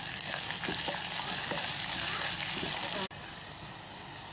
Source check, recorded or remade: recorded